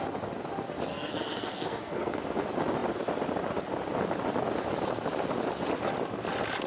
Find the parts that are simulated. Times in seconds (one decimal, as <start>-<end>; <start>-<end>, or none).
0.9-2.2